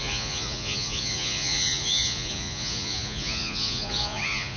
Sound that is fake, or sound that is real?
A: fake